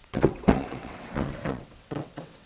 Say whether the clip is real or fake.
fake